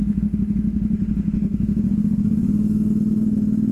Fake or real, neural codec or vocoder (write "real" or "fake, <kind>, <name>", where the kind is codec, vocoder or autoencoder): fake, autoencoder, DAC-VAE